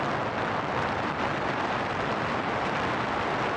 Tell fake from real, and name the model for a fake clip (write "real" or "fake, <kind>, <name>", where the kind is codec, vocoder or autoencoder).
real